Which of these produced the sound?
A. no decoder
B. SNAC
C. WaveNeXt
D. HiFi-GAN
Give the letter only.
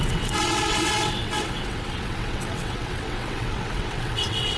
C